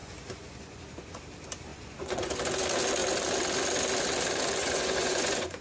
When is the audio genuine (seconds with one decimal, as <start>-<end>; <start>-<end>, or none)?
1.2-1.7; 2.3-4.6